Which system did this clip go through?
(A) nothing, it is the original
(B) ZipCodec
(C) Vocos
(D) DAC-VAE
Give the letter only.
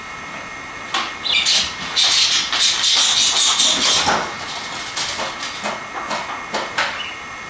A